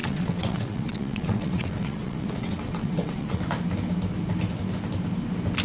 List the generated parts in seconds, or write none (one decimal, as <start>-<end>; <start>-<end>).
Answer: 0.0-3.4